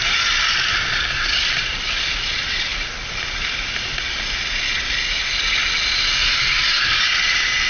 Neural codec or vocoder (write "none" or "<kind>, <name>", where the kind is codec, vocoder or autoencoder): none